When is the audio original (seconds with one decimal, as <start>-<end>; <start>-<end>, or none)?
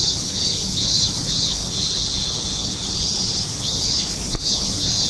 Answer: none